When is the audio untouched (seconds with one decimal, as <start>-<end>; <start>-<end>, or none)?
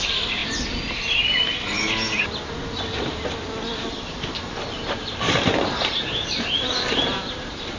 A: 0.4-5.1